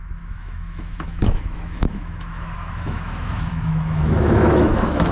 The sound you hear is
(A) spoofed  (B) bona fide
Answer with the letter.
A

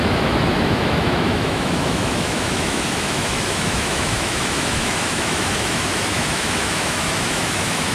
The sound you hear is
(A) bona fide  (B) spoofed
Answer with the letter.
B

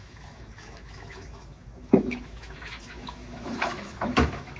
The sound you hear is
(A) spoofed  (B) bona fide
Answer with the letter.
A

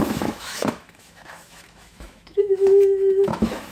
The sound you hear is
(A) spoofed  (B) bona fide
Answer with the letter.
A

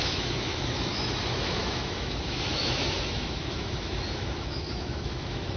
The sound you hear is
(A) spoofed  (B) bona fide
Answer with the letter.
A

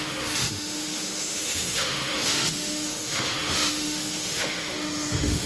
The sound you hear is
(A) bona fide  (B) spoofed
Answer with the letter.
B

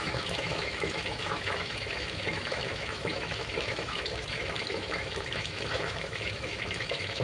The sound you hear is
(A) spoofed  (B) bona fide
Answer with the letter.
A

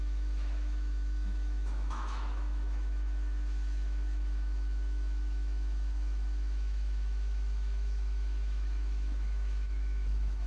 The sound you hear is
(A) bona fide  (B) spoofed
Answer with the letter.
B